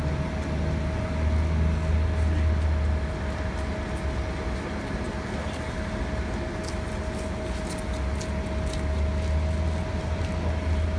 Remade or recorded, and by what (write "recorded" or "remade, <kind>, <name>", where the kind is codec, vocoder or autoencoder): recorded